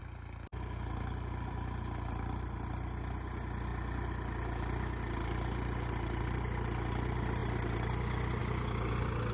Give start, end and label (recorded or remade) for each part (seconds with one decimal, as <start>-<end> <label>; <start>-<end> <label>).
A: 0.0-9.3 recorded